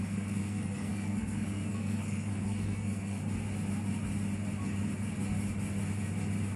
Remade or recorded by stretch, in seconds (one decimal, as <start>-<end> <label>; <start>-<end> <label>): 0.0-3.2 remade; 3.2-6.6 recorded